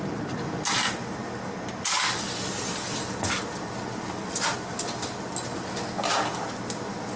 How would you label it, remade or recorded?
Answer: recorded